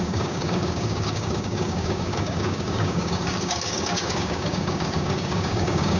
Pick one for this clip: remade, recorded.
remade